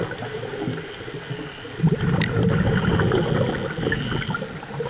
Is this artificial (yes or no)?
no